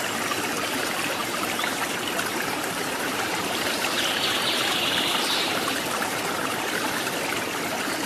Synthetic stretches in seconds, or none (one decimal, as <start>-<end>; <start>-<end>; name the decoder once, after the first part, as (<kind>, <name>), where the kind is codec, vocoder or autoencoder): 1.2-1.8 (vocoder, BigVGAN v2); 2.3-6.9

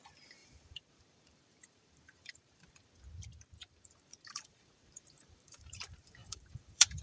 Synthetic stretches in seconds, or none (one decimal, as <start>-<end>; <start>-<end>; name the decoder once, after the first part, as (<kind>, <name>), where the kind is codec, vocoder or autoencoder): 0.4-2.9 (vocoder, BigVGAN v2); 3.6-7.0